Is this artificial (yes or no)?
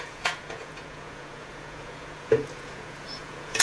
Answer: yes